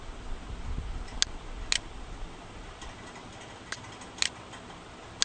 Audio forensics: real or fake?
real